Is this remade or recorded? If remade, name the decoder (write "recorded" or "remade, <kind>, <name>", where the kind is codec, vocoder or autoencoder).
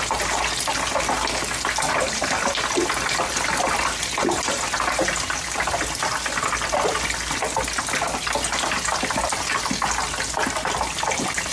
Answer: recorded